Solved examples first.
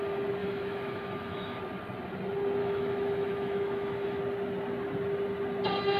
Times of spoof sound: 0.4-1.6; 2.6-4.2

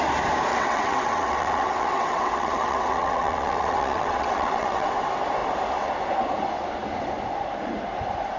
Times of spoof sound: 0.5-4.9

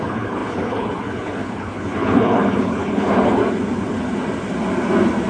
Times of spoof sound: 0.0-3.4

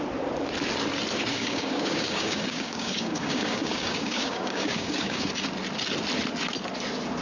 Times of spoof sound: 1.3-5.3

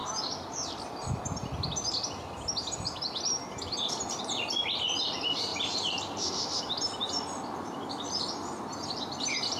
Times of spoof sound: 5.5-6.6

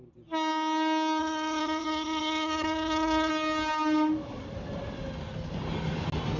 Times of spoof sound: 1.2-3.3

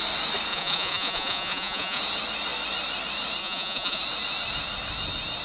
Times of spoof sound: 0.5-2.0; 3.4-4.0